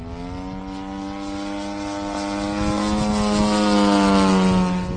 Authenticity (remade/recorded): recorded